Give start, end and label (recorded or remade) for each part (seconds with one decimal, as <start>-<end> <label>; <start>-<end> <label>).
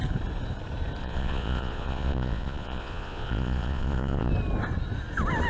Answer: 0.0-1.0 recorded; 1.0-4.3 remade; 4.3-5.5 recorded